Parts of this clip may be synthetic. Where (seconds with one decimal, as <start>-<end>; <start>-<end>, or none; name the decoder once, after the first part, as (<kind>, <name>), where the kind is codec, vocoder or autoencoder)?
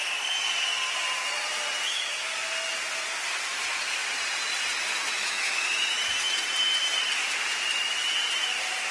1.9-2.4 (autoencoder, DAC-VAE); 5.2-6.3